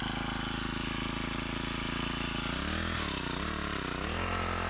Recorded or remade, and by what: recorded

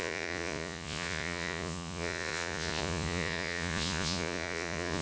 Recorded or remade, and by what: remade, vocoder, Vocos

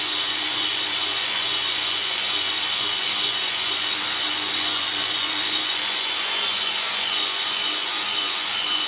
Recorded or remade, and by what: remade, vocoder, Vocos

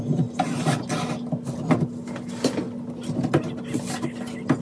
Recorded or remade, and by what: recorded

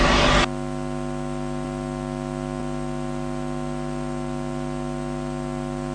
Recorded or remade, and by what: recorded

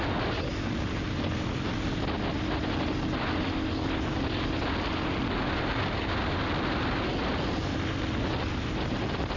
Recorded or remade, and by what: recorded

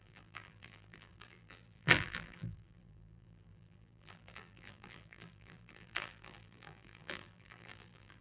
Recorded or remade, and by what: remade, vocoder, BigVGAN v2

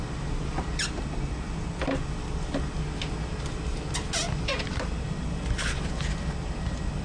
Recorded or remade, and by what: recorded